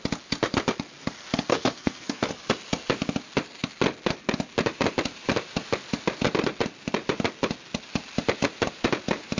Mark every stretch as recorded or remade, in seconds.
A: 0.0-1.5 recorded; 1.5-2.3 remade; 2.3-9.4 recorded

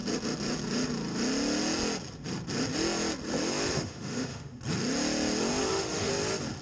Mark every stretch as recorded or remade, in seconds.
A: 0.0-3.7 recorded; 3.7-4.6 remade; 4.6-5.6 recorded; 5.6-6.1 remade; 6.1-6.6 recorded